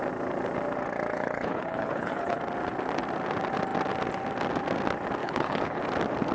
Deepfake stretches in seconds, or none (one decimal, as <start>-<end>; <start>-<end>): 1.1-2.4; 5.2-5.8